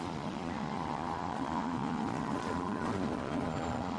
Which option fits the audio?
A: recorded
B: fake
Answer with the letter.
B